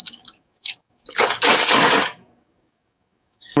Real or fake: fake